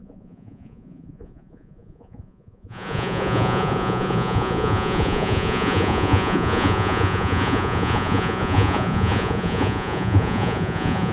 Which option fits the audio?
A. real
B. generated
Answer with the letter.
B